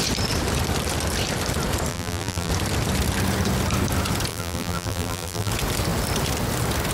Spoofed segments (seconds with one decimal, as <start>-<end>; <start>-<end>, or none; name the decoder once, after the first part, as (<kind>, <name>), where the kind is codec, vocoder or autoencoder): 1.9-2.5 (vocoder, BigVGAN v2); 4.3-5.5

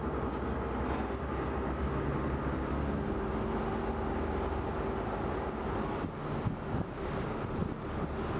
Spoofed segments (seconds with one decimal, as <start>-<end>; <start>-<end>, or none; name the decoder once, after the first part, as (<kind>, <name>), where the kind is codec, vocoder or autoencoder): none